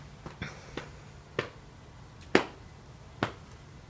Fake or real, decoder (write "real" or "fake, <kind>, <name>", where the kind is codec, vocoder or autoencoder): real